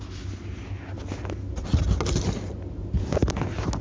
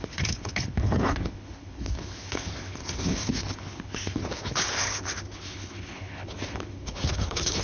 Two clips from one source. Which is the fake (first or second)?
second